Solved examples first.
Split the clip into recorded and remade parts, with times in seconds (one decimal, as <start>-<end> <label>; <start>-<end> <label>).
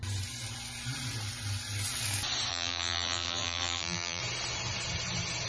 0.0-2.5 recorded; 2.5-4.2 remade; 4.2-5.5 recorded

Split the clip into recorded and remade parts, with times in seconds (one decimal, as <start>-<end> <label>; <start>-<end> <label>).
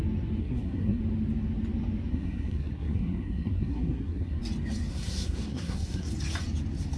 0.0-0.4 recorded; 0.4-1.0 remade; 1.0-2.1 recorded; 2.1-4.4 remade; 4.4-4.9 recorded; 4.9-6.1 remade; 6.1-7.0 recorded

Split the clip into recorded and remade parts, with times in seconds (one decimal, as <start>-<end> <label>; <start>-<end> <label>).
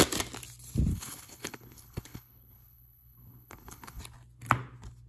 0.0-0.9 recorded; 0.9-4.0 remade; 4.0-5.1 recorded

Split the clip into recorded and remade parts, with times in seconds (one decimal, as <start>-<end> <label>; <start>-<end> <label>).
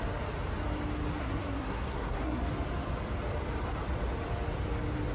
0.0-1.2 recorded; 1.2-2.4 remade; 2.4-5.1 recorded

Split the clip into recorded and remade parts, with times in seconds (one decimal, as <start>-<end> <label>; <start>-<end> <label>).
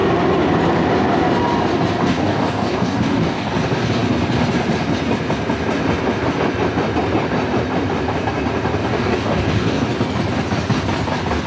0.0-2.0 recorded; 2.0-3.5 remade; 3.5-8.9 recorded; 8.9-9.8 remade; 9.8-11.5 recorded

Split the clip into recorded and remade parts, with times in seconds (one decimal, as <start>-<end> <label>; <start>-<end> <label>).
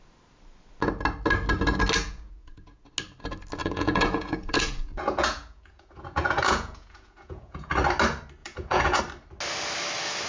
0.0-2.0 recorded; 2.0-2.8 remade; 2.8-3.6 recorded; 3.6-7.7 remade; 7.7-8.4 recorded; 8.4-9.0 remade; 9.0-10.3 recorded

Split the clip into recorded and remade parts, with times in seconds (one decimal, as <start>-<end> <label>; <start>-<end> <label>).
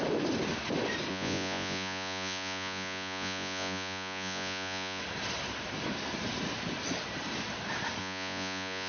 0.0-1.1 recorded; 1.1-5.0 remade; 5.0-8.0 recorded; 8.0-8.9 remade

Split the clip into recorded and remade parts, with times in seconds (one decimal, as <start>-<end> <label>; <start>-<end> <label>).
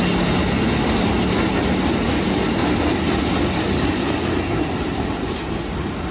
0.0-6.1 recorded